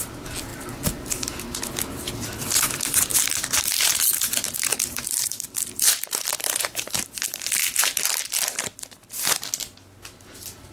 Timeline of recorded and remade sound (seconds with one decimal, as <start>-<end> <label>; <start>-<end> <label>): 0.0-0.5 recorded; 0.5-1.6 remade; 1.6-3.1 recorded; 3.1-8.2 remade; 8.2-10.7 recorded